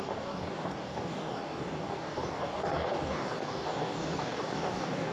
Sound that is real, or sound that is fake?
fake